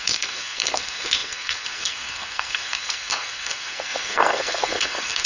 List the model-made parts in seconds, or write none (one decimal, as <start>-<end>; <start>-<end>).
0.0-5.3